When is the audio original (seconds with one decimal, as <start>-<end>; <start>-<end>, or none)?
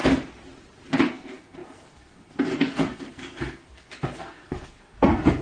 0.0-0.9